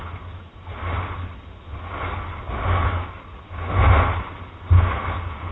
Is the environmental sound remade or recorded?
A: recorded